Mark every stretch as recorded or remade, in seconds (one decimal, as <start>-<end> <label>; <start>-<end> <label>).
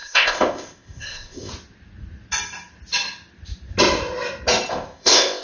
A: 0.0-1.5 remade; 1.5-4.7 recorded; 4.7-5.4 remade